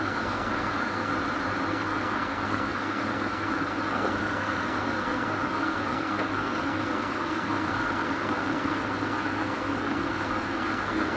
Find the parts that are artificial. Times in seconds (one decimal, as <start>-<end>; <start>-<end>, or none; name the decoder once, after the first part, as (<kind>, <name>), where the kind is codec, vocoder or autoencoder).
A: 0.0-1.1 (codec, SNAC); 1.7-11.2

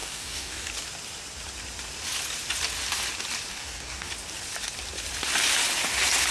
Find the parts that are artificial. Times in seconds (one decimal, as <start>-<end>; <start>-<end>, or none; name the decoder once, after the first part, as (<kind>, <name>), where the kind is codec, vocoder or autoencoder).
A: 0.0-0.7 (codec, DAC); 3.5-4.1

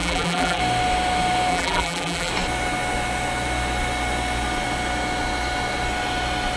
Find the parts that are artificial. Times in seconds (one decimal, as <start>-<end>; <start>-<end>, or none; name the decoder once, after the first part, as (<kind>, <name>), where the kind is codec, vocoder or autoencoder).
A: 0.0-0.6 (vocoder, BigVGAN v2); 1.5-2.3

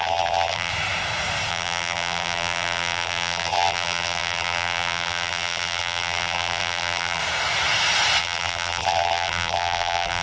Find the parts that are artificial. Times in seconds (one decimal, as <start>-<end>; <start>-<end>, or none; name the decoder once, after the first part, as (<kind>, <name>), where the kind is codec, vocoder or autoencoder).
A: 0.0-0.7 (vocoder, BigVGAN v2); 1.5-7.2; 8.2-10.2

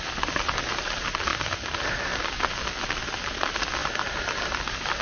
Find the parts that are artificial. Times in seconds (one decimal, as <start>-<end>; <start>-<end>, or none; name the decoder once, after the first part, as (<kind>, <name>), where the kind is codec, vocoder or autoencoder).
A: 0.0-1.3 (vocoder, BigVGAN v2); 2.0-3.8

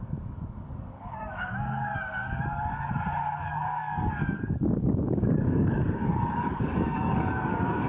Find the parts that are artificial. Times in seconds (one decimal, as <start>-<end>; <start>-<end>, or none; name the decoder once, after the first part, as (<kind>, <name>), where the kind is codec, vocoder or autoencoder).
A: 0.0-1.9 (codec, DAC); 3.4-7.9